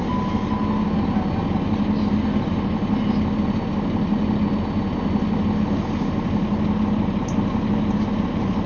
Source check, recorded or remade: recorded